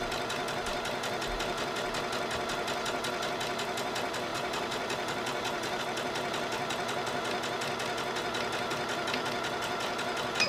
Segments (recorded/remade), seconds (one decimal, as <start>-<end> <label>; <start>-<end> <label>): 0.0-4.3 recorded; 4.3-5.8 remade; 5.8-10.5 recorded